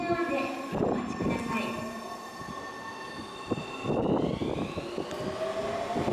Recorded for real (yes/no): yes